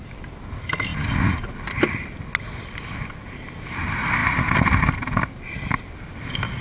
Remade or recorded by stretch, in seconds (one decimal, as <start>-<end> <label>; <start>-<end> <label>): 0.0-6.6 recorded